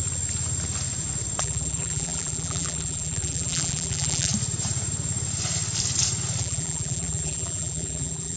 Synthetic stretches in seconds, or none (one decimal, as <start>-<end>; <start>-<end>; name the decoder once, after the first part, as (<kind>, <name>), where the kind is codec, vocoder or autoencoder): 1.4-4.3 (vocoder, BigVGAN v2); 6.4-8.4